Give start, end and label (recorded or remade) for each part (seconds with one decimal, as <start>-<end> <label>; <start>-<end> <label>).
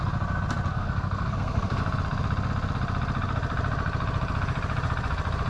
0.0-0.7 recorded; 0.7-1.8 remade; 1.8-5.5 recorded